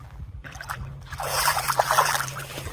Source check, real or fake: fake